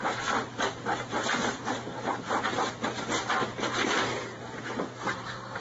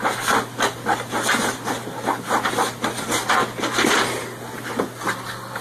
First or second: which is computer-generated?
first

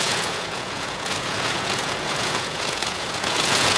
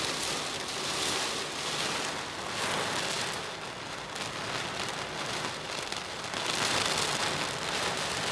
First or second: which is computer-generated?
first